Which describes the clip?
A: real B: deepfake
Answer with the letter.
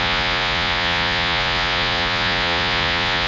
B